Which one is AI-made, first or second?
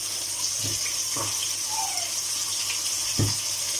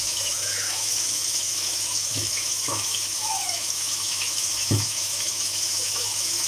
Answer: second